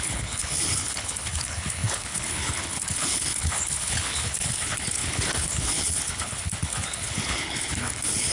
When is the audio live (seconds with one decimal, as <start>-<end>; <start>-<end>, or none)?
none